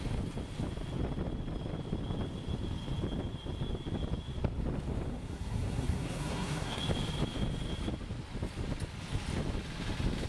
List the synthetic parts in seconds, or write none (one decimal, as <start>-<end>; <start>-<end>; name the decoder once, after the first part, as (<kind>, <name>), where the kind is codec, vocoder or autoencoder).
5.1-6.8 (codec, SNAC)